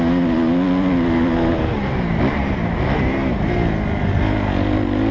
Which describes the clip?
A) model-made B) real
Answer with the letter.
B